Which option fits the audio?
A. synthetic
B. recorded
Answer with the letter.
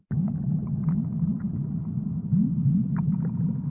B